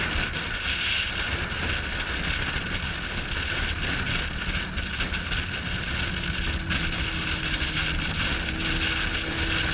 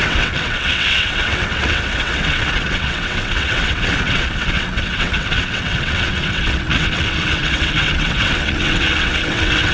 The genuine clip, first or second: first